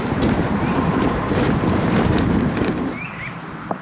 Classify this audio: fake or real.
fake